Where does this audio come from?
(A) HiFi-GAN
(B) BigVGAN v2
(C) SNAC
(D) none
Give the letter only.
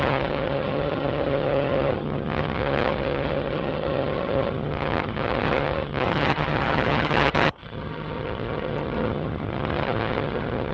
A